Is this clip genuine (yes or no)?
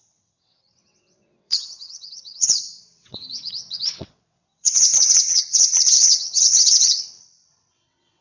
no